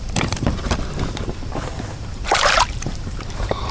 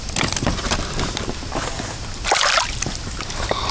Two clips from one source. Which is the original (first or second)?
second